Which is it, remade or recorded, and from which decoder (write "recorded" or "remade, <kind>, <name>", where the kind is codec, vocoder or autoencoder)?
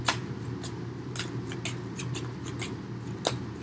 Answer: recorded